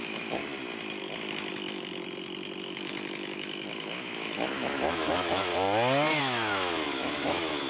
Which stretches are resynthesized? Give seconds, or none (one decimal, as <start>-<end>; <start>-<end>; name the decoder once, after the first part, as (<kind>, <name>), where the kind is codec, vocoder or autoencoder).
0.0-0.4 (autoencoder, DAC-VAE); 1.5-1.9; 2.6-5.5; 6.2-7.7